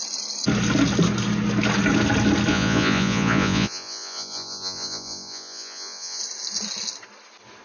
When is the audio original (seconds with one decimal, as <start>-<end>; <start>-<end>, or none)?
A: 0.0-2.5; 6.2-7.6